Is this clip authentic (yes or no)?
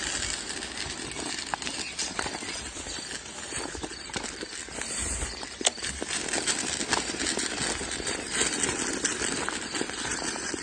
yes